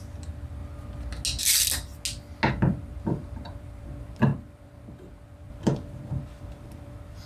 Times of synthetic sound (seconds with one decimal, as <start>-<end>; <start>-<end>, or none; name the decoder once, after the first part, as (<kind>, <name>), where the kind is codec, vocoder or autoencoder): 0.0-0.6 (vocoder, BigVGAN v2); 1.4-1.9; 2.5-7.3